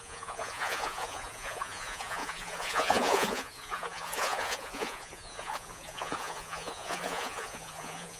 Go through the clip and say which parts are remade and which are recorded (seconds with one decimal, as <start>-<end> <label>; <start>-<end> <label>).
0.0-8.2 remade